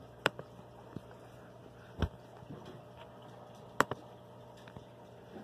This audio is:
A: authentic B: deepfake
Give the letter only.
A